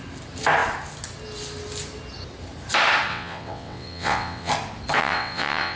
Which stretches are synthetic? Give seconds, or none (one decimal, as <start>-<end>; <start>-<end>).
3.1-4.5; 5.0-5.8